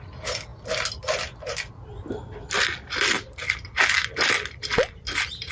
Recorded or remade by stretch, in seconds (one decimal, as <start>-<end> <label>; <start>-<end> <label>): 0.0-5.5 recorded